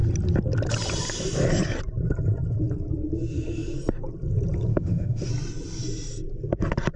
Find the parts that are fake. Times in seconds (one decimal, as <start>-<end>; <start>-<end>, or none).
4.7-5.3